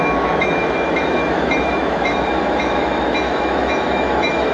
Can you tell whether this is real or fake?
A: fake